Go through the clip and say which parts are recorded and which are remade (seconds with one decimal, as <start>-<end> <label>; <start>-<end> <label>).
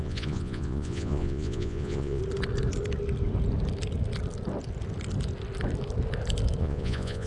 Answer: 0.0-2.2 remade; 2.2-6.6 recorded; 6.6-7.3 remade